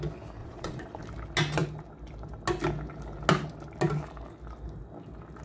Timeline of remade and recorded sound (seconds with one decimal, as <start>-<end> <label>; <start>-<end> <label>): 0.0-0.4 recorded; 0.4-1.0 remade; 1.0-5.4 recorded